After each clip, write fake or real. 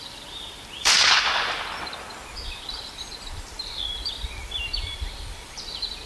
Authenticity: fake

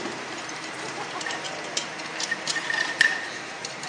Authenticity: fake